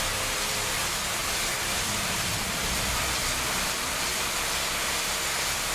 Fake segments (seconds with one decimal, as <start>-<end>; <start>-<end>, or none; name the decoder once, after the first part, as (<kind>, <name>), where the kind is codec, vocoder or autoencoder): 0.0-1.2 (vocoder, BigVGAN v2); 1.7-5.7

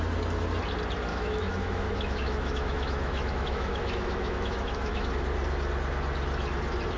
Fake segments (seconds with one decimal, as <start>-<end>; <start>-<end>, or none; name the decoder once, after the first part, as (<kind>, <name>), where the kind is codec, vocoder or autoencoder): 1.1-5.1 (autoencoder, DAC-VAE)

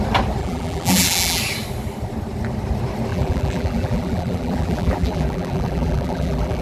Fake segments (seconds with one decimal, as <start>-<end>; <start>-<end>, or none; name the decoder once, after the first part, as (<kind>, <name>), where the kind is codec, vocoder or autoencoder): 0.4-1.4 (vocoder, BigVGAN v2); 3.1-6.6

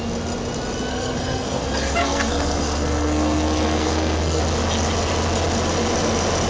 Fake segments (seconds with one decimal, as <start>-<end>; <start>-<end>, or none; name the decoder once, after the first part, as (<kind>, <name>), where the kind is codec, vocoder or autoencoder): 0.9-1.6 (codec, SNAC); 2.0-4.4